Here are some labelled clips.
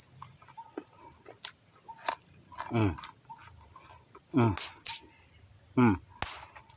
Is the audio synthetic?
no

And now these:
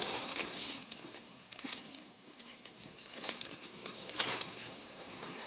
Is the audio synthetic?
yes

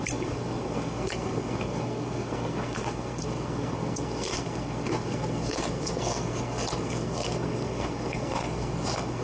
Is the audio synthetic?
yes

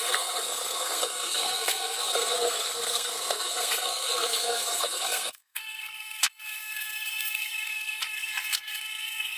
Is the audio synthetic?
yes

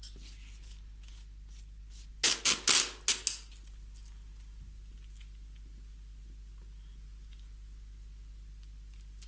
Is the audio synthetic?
no